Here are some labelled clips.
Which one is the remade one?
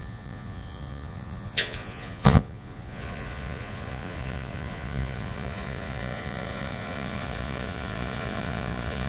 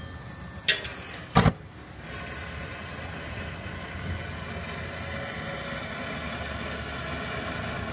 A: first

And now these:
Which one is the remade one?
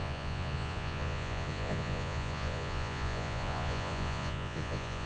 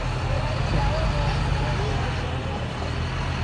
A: first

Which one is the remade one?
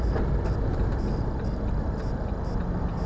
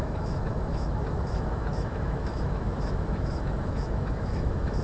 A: second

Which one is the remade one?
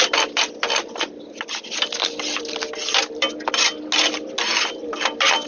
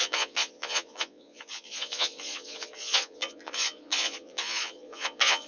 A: second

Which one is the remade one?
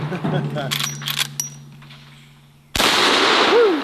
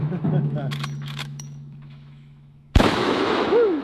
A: second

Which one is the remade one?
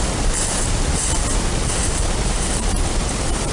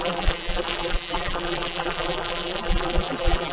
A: second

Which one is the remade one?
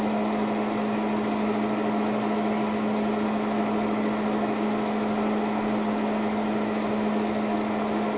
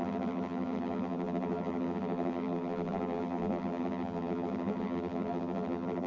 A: second